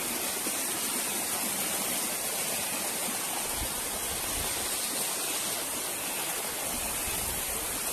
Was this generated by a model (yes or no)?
no